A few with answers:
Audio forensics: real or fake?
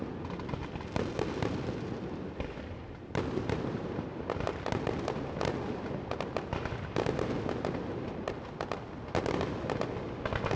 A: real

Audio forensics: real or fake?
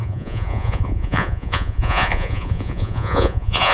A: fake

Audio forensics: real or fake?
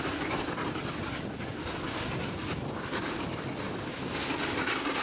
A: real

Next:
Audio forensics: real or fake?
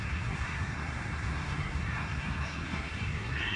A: fake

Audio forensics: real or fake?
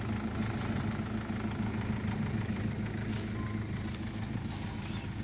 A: real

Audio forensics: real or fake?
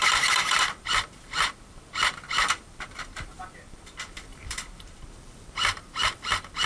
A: fake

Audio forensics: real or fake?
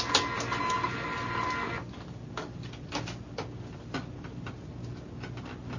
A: real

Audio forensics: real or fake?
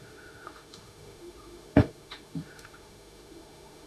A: fake